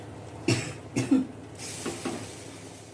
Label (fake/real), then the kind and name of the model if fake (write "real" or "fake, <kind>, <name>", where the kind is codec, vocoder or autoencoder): real